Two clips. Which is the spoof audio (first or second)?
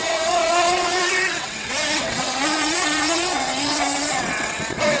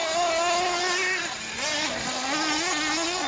first